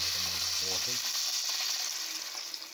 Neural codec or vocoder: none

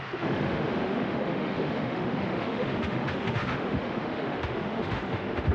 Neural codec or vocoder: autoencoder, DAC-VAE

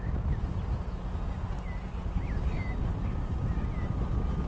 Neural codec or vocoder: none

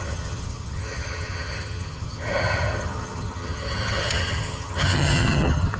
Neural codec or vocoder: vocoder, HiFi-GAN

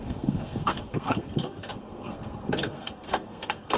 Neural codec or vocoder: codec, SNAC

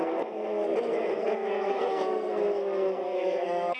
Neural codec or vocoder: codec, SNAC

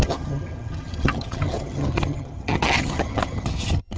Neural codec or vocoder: vocoder, HiFi-GAN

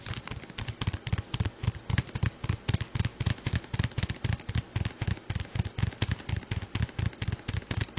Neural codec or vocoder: none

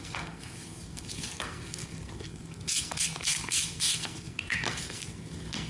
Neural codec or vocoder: codec, SNAC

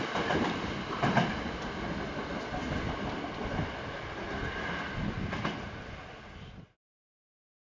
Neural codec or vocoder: none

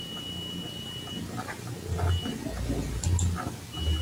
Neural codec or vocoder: none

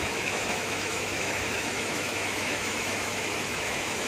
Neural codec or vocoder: autoencoder, DAC-VAE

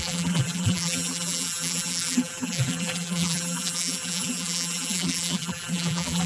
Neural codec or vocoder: vocoder, BigVGAN v2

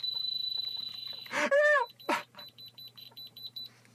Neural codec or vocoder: vocoder, BigVGAN v2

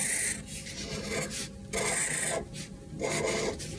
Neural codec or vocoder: none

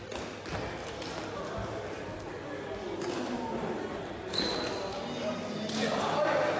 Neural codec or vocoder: none